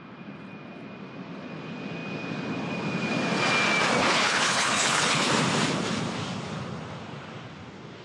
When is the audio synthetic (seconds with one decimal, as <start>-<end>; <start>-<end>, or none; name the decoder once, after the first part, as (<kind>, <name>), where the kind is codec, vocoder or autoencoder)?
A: 4.0-5.3 (codec, HILCodec)